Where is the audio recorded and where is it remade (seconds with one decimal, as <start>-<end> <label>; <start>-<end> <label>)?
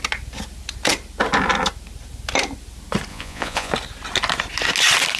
0.0-3.1 recorded; 3.1-3.7 remade; 3.7-5.2 recorded